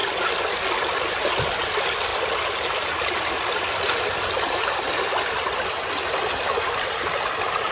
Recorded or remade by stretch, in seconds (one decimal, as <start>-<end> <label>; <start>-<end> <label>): 0.0-1.4 recorded; 1.4-2.1 remade; 2.1-6.7 recorded; 6.7-7.7 remade